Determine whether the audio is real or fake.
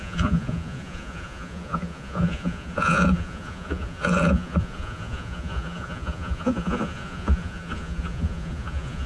fake